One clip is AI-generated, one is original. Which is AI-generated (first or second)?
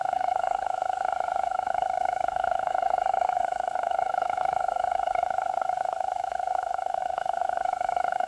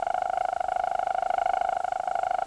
first